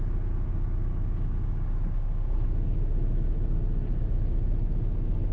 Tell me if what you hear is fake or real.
real